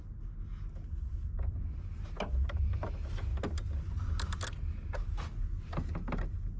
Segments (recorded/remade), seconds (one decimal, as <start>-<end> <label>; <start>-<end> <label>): 0.0-6.6 recorded